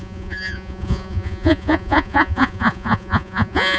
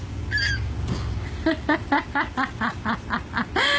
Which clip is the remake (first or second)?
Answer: first